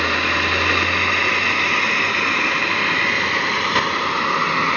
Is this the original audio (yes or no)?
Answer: yes